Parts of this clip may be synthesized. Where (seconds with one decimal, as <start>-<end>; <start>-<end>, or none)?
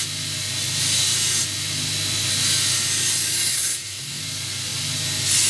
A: 3.5-4.2